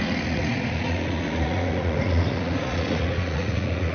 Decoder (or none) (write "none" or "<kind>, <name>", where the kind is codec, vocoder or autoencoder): vocoder, Vocos